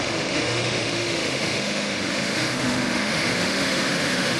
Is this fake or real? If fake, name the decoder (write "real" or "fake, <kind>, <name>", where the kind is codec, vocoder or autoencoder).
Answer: fake, autoencoder, DAC-VAE